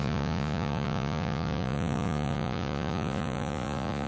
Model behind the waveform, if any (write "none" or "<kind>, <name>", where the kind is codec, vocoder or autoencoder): vocoder, Vocos